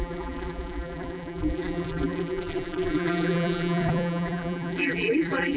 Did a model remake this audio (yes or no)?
yes